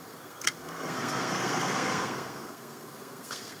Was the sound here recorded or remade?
remade